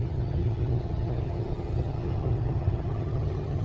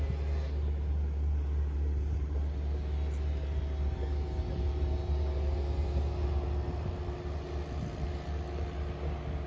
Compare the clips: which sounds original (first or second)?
second